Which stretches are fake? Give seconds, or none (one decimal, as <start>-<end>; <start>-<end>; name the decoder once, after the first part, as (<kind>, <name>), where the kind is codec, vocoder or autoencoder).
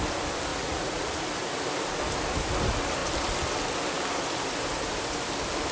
0.5-1.1 (vocoder, Vocos)